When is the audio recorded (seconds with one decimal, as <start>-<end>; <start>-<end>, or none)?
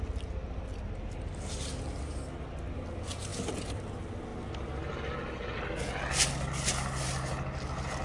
0.0-8.0